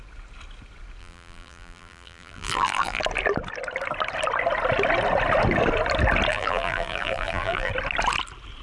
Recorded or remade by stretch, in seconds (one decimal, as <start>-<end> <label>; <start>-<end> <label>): 0.0-1.0 recorded; 1.0-3.0 remade; 3.0-6.3 recorded; 6.3-7.7 remade; 7.7-8.6 recorded